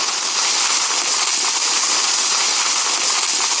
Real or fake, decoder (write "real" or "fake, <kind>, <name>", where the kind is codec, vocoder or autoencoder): real